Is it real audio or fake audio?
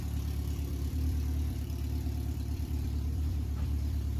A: fake